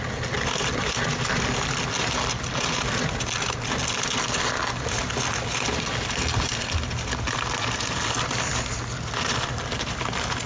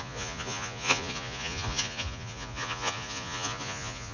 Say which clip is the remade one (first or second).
second